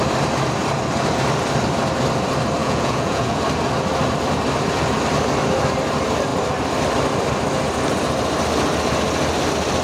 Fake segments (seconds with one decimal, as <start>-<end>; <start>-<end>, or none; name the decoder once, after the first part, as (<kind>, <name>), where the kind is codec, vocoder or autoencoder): 2.6-3.4 (vocoder, Vocos)